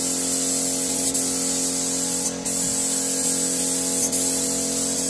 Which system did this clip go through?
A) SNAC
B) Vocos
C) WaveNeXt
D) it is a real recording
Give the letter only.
D